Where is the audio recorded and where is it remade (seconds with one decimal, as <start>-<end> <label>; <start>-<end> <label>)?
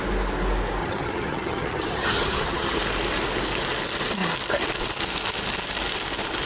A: 0.0-0.8 recorded; 0.8-2.8 remade; 2.8-6.5 recorded